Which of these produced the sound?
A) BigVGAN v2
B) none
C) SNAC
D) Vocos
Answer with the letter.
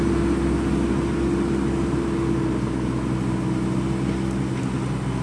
B